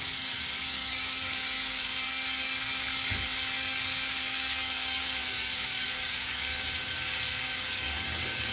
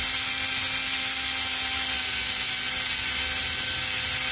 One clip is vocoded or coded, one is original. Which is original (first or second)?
second